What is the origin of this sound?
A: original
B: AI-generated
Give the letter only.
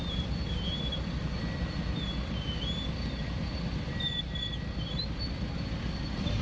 A